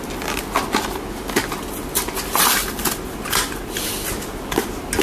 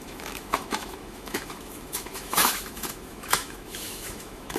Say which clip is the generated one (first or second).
second